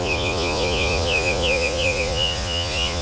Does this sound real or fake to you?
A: fake